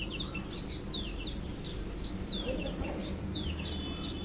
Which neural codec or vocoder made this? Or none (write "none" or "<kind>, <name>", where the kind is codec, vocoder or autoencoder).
none